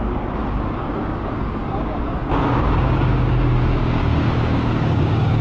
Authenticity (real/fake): fake